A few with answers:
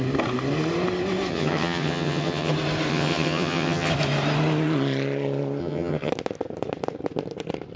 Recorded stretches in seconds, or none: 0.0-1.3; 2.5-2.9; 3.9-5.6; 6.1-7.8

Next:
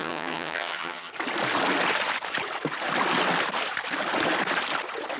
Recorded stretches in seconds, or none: 1.1-5.2

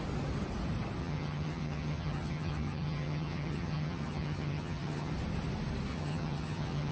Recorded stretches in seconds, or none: 0.0-1.0; 5.1-5.9

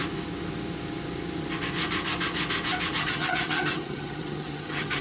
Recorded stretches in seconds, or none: 0.0-3.0